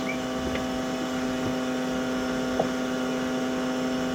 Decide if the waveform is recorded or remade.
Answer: recorded